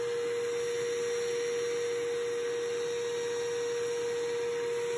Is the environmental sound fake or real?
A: real